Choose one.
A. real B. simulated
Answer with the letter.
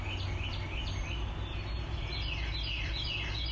A